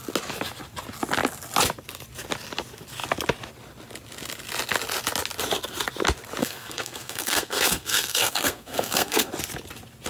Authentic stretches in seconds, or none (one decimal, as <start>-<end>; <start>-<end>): 0.0-6.4; 9.3-10.1